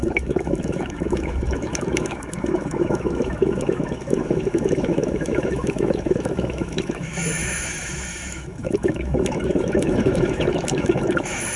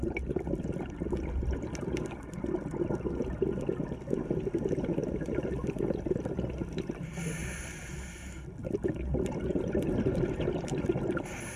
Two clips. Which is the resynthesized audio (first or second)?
first